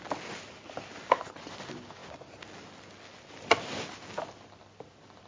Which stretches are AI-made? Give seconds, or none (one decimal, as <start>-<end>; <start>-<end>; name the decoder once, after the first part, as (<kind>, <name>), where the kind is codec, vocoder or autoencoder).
none